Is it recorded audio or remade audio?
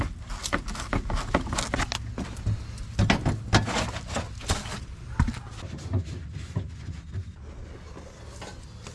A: recorded